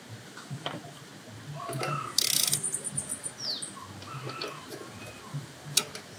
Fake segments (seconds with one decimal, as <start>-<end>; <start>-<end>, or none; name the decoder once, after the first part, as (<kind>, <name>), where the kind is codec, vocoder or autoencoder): 0.0-1.1 (vocoder, BigVGAN v2); 4.7-6.2